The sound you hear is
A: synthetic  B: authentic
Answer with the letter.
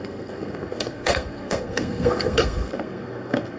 A